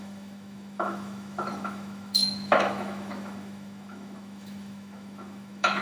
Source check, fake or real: fake